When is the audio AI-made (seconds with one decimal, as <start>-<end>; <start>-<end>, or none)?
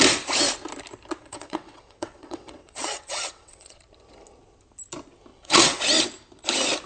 1.2-3.8; 5.3-5.8